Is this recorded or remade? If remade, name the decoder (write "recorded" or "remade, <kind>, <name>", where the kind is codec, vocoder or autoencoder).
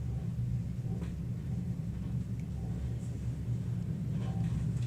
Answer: recorded